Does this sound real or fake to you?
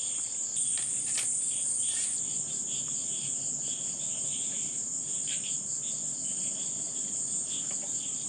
real